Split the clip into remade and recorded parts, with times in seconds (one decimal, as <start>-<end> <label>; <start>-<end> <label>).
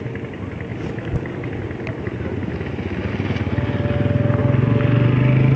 0.0-5.6 recorded